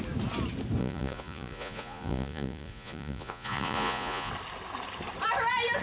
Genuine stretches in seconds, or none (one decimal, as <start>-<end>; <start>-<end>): 0.0-0.8; 4.3-5.8